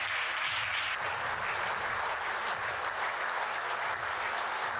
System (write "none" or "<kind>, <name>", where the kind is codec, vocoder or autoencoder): none